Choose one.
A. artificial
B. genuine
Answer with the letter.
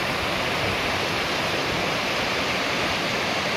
B